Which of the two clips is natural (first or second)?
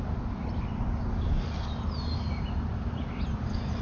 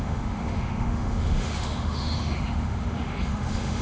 first